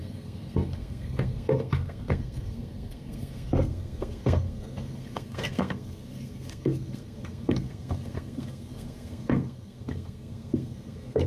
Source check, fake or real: fake